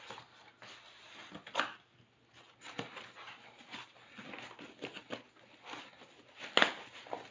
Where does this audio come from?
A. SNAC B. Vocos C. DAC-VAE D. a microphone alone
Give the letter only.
D